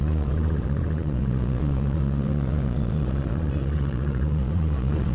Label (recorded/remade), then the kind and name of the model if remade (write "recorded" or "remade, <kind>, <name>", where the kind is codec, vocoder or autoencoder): remade, vocoder, Vocos